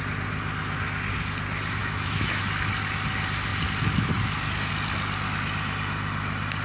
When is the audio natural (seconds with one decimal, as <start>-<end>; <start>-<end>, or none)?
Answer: 0.0-1.8; 2.4-6.6